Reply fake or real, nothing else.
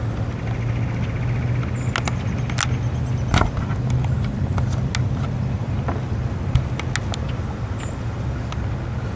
real